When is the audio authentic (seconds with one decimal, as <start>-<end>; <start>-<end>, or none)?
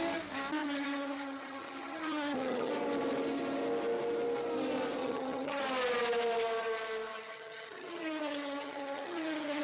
0.0-0.6; 2.7-5.0; 5.6-7.1